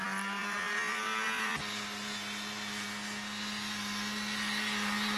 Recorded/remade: recorded